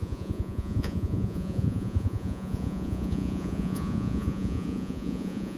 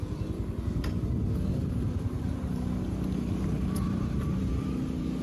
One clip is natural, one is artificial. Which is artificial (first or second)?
first